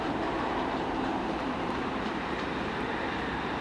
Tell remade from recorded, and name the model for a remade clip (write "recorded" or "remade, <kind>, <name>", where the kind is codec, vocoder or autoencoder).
remade, vocoder, BigVGAN v2